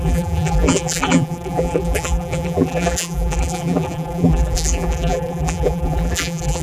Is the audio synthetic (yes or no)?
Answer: yes